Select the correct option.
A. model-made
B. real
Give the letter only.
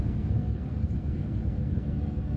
A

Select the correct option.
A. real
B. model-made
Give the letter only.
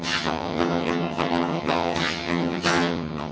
B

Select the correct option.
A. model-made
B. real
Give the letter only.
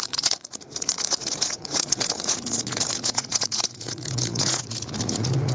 A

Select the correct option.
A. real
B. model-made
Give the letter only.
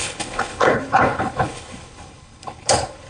B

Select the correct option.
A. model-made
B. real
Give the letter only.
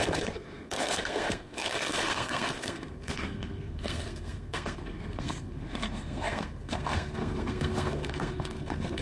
A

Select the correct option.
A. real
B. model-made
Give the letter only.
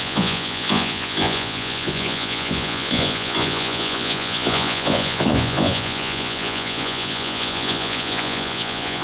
B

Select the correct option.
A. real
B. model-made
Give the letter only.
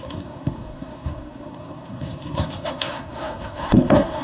B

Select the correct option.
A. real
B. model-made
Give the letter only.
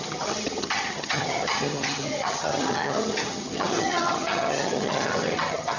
B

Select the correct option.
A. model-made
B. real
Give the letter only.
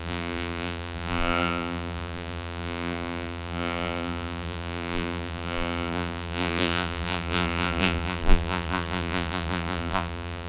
A